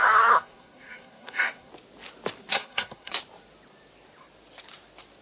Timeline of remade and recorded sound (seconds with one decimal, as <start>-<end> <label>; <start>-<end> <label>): 0.0-1.7 remade; 1.7-2.5 recorded; 2.5-3.1 remade; 3.1-5.2 recorded